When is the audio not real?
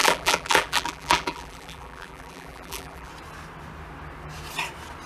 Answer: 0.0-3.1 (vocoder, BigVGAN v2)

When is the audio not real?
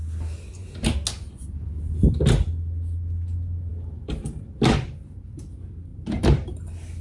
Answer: 5.9-6.6 (vocoder, BigVGAN v2)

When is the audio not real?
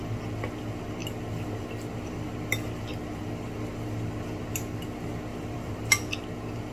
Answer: 5.3-5.9 (vocoder, BigVGAN v2)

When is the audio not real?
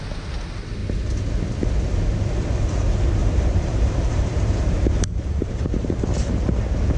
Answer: 3.2-6.5 (vocoder, BigVGAN v2)